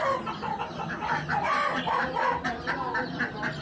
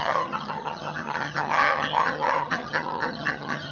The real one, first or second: first